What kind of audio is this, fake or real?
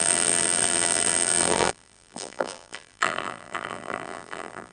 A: fake